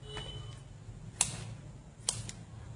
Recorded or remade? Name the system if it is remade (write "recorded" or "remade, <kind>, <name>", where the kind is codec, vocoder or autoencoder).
recorded